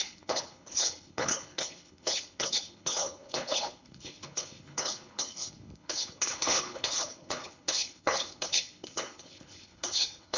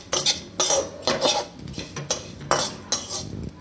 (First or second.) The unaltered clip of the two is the second